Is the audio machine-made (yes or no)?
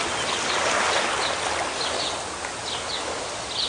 no